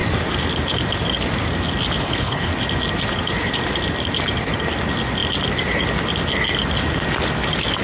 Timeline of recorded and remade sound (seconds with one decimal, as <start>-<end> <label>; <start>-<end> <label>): 0.0-2.0 recorded; 2.0-2.5 remade; 2.5-7.8 recorded